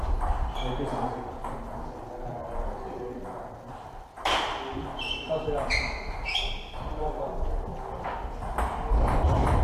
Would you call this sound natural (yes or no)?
yes